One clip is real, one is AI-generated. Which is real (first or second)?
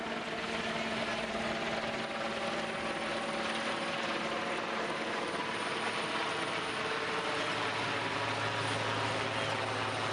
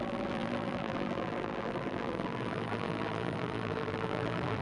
first